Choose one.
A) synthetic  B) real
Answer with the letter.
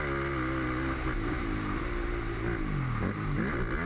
B